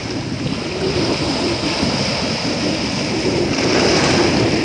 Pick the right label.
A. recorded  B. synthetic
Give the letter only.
A